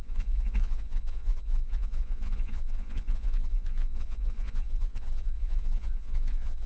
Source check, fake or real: fake